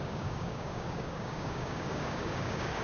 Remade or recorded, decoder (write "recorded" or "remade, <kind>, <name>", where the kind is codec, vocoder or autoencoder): remade, codec, DAC